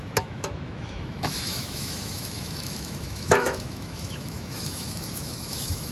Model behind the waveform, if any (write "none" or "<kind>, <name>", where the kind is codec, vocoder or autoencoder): autoencoder, DAC-VAE